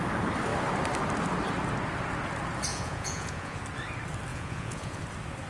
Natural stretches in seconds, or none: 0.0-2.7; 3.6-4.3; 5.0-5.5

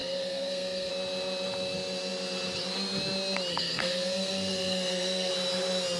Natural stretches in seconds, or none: 0.9-3.5; 5.3-6.0

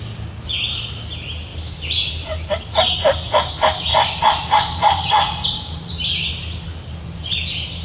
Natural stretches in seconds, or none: 0.0-3.9; 6.3-7.8

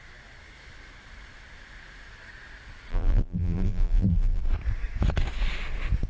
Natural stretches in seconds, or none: 0.0-2.9; 4.4-6.1